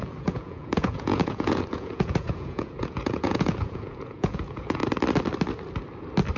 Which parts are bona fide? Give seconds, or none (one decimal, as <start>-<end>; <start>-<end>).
4.8-6.4